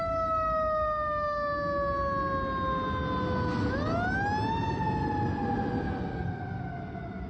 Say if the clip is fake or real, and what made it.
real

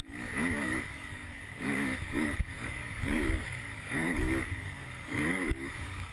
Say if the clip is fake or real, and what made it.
fake, codec, DAC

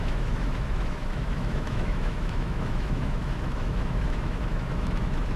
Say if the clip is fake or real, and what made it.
fake, autoencoder, DAC-VAE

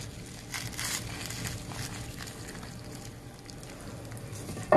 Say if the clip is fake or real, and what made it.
real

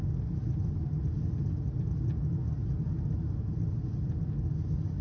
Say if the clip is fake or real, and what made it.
real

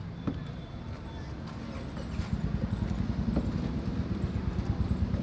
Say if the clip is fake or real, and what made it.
real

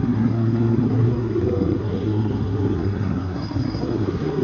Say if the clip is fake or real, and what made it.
fake, codec, SNAC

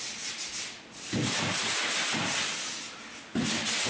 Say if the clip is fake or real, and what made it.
real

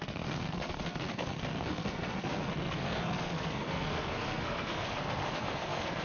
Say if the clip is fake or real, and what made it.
fake, codec, SNAC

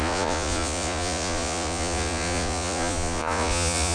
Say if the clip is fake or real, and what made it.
fake, vocoder, Vocos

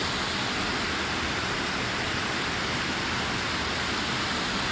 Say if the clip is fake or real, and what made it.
real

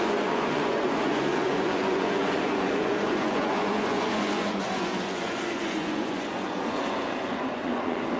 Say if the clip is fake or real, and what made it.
fake, vocoder, Vocos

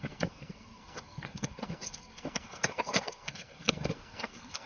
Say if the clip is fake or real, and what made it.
fake, codec, SNAC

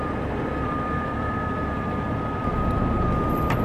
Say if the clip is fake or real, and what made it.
fake, vocoder, BigVGAN v2